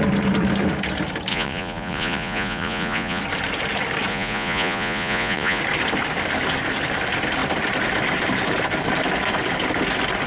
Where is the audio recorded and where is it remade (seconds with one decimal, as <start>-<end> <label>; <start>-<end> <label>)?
0.0-1.3 recorded; 1.3-3.2 remade; 3.2-4.1 recorded; 4.1-5.6 remade; 5.6-10.3 recorded